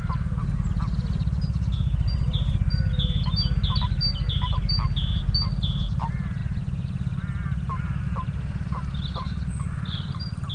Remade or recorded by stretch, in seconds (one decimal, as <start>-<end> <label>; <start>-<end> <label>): 0.0-10.5 recorded